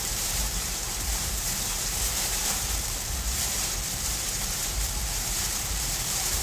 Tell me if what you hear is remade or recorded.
remade